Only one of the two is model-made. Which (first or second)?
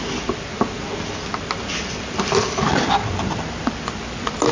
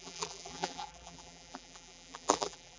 second